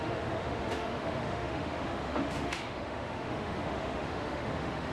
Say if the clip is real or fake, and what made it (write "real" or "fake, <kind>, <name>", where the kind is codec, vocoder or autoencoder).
fake, autoencoder, DAC-VAE